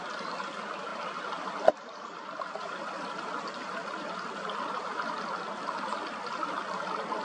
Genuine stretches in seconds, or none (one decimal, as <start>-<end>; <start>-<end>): 0.0-0.9; 5.2-7.2